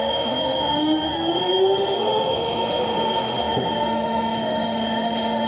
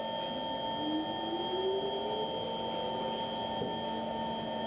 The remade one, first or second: first